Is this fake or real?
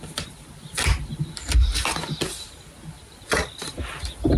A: real